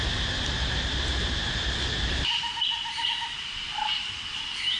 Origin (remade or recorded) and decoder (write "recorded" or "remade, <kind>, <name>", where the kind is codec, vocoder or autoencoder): recorded